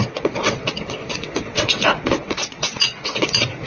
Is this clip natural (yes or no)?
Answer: no